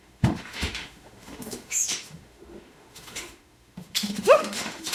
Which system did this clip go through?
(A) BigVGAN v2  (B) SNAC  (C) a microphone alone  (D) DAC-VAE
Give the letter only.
D